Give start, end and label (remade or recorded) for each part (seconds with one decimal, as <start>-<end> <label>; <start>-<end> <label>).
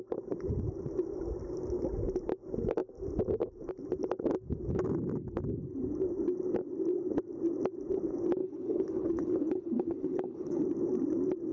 0.0-8.4 recorded; 8.4-10.6 remade; 10.6-11.5 recorded